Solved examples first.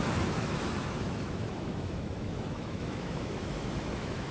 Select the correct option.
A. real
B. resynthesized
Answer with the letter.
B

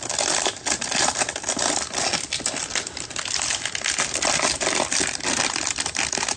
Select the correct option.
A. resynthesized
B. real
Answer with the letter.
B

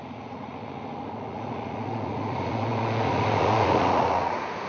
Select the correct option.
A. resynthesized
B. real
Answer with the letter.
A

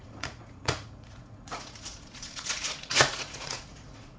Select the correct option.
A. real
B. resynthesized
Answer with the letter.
B